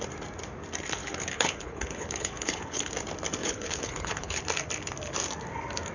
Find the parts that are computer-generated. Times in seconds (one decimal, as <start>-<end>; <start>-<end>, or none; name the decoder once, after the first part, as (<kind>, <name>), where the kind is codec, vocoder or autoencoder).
1.0-2.8 (codec, HILCodec); 3.4-4.4